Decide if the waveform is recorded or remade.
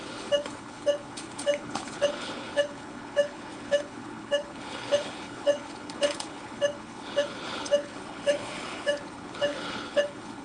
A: remade